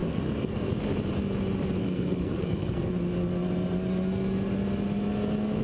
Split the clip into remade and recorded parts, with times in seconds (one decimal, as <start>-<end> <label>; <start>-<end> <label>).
0.0-0.8 remade; 0.8-1.8 recorded; 1.8-2.9 remade; 2.9-5.6 recorded